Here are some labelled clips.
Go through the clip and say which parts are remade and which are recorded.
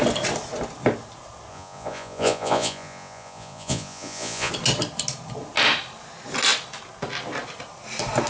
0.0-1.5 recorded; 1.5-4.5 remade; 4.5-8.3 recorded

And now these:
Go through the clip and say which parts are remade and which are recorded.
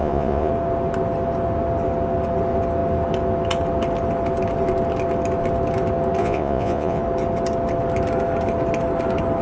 0.0-0.5 remade; 0.5-6.2 recorded; 6.2-7.0 remade; 7.0-9.4 recorded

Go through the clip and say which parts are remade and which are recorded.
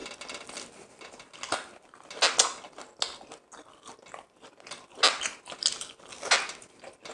0.0-7.1 recorded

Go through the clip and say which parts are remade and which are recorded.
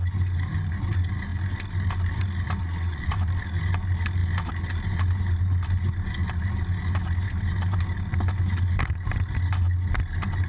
0.0-2.6 recorded; 2.6-3.1 remade; 3.1-10.5 recorded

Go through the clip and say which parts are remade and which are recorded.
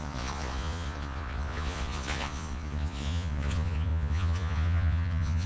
0.0-5.5 remade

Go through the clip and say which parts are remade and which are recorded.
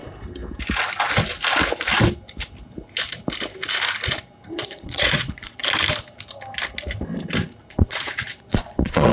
0.0-4.5 recorded; 4.5-5.6 remade; 5.6-7.7 recorded; 7.7-9.1 remade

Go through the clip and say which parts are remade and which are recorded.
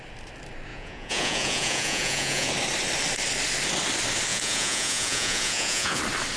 0.0-0.7 recorded; 0.7-2.5 remade; 2.5-4.3 recorded; 4.3-6.0 remade; 6.0-6.4 recorded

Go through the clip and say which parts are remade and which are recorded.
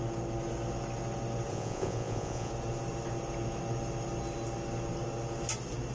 0.0-1.5 recorded; 1.5-2.5 remade; 2.5-5.9 recorded